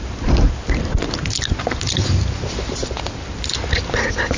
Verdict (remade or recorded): recorded